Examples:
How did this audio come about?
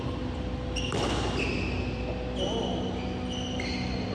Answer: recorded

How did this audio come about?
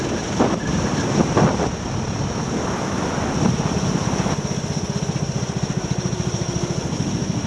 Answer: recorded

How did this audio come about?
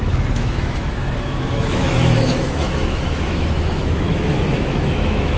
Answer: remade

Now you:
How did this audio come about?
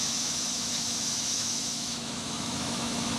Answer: remade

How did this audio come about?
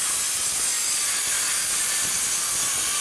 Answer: recorded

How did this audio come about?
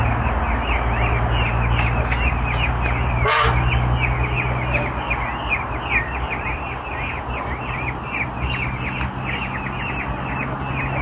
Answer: recorded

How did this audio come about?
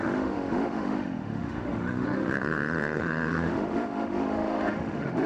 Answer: remade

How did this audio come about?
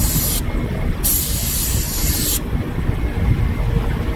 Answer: recorded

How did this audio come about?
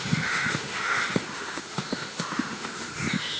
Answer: remade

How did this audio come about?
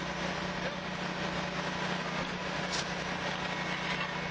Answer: recorded